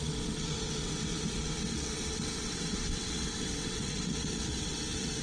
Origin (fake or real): fake